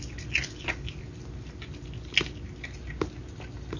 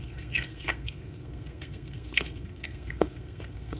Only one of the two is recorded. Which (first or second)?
first